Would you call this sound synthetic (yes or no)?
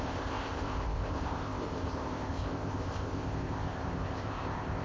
yes